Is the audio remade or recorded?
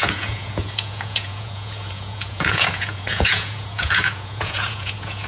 remade